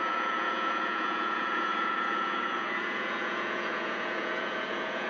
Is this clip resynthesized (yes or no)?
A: yes